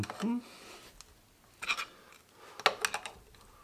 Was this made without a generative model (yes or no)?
yes